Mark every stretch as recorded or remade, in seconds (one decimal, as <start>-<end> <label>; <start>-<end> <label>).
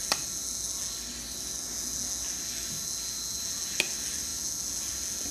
0.0-5.3 recorded